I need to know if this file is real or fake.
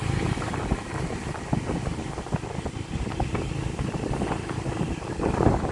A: real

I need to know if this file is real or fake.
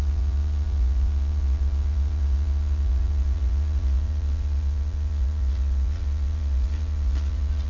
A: fake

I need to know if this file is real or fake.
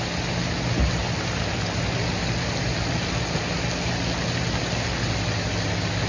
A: real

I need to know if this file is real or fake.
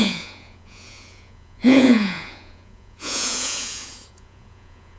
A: fake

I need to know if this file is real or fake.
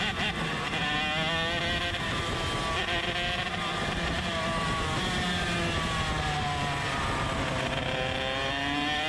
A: real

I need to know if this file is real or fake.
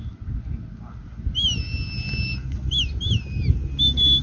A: real